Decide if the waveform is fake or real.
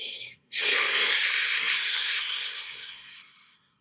fake